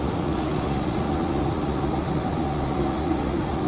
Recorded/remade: remade